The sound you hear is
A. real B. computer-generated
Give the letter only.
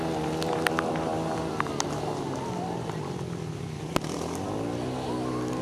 A